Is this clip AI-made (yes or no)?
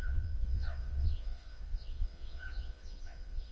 yes